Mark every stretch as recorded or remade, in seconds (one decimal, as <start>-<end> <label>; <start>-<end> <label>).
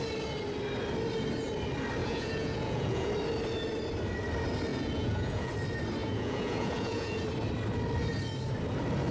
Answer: 0.0-2.0 recorded; 2.0-3.1 remade; 3.1-4.7 recorded; 4.7-5.5 remade; 5.5-6.0 recorded; 6.0-7.2 remade; 7.2-9.1 recorded